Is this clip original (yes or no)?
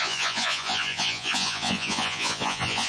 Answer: no